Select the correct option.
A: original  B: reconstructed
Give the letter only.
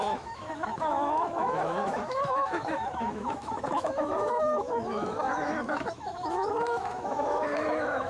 B